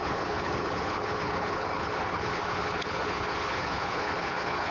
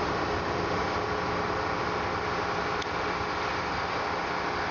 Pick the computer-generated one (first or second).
first